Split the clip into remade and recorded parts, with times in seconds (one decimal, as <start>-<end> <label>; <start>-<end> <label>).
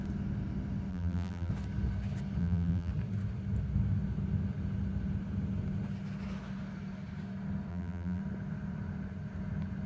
0.0-0.9 recorded; 0.9-1.5 remade; 1.5-2.4 recorded; 2.4-2.9 remade; 2.9-7.7 recorded; 7.7-8.2 remade; 8.2-9.9 recorded